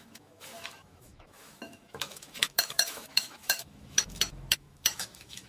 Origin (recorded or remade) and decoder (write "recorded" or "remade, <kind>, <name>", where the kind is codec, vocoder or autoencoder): remade, autoencoder, DAC-VAE